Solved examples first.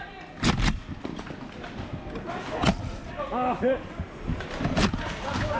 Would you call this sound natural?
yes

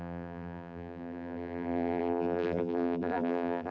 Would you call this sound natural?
no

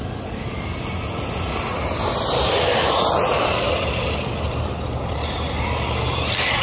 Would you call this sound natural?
yes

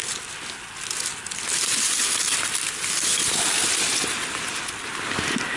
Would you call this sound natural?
yes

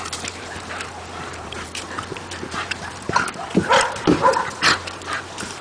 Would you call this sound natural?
no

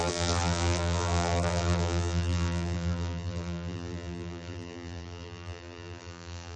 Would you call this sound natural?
no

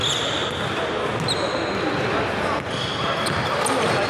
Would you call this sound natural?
yes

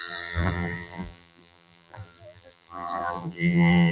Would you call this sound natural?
no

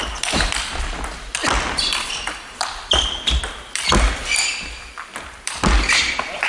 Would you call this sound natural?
no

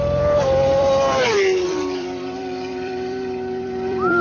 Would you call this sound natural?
no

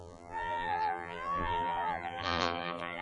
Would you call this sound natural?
no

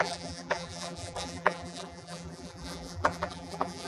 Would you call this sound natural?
no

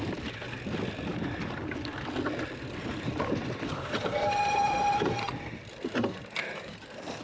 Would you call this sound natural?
no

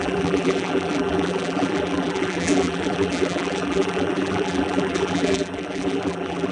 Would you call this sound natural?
no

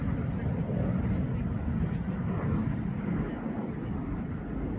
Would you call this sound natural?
yes